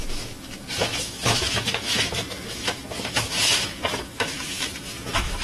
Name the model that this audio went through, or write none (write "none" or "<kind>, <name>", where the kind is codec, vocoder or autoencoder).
autoencoder, DAC-VAE